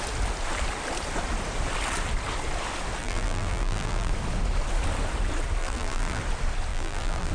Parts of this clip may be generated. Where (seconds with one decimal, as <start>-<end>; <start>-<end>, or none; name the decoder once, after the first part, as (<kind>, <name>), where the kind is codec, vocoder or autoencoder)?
3.0-4.1 (vocoder, BigVGAN v2); 5.6-6.2; 6.7-7.3